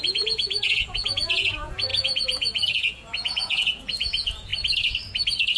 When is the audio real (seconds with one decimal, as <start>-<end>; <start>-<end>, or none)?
4.5-5.6